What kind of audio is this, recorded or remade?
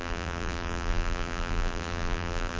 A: remade